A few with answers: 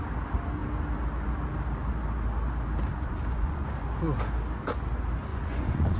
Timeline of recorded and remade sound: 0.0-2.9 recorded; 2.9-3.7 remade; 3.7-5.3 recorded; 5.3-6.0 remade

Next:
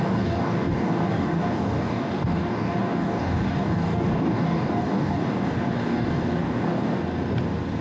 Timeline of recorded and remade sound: 0.0-7.0 remade; 7.0-7.8 recorded

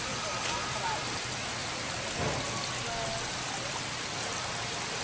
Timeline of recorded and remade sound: 0.0-5.0 recorded

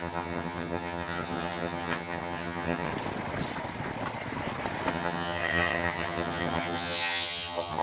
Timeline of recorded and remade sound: 0.0-2.9 remade; 2.9-4.9 recorded; 4.9-7.8 remade

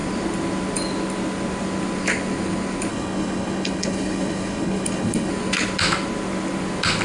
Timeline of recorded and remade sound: 0.0-2.9 recorded; 2.9-5.3 remade; 5.3-7.0 recorded